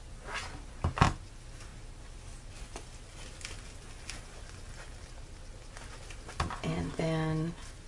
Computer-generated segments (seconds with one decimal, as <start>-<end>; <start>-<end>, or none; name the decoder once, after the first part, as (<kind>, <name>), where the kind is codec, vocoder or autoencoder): none